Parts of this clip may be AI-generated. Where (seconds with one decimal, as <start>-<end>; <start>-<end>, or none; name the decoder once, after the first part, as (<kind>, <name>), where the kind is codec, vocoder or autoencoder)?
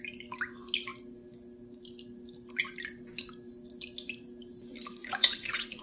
5.0-5.8 (vocoder, Vocos)